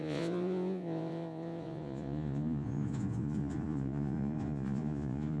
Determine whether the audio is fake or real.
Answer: fake